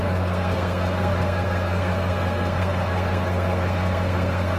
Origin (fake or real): fake